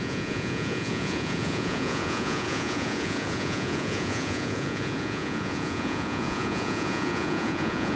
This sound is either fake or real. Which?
fake